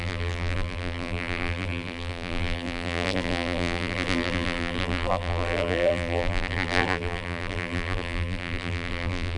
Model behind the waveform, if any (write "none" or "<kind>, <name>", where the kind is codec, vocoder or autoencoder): vocoder, BigVGAN v2